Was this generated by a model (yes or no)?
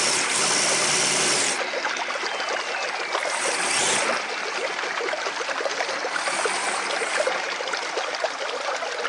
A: no